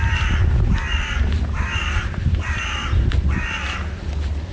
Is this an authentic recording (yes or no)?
yes